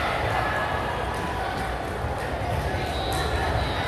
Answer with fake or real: real